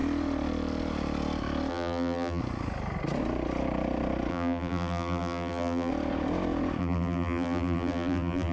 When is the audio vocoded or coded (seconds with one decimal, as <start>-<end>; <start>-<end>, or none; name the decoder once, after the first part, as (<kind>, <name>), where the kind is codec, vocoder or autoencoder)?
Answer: 1.7-2.4 (vocoder, BigVGAN v2); 4.3-5.9; 6.8-8.5